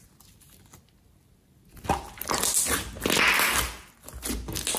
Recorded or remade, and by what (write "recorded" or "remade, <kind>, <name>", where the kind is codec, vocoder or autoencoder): recorded